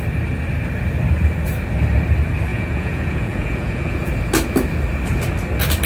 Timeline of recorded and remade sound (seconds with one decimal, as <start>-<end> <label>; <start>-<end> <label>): 0.0-2.5 recorded; 2.5-4.1 remade; 4.1-5.9 recorded